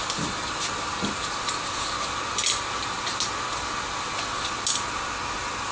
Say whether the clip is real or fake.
real